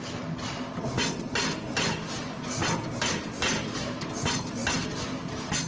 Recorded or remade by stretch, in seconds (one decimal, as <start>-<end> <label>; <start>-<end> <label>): 0.0-5.7 recorded